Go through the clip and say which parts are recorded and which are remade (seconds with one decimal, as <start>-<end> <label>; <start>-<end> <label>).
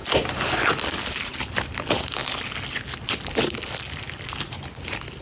0.0-5.2 recorded